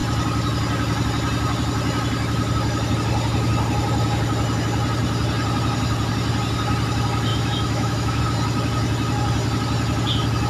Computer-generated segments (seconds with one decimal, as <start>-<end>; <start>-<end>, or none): 7.3-8.2